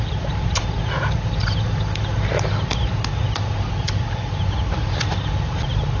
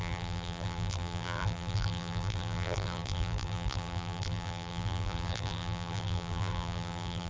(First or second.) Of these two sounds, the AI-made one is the second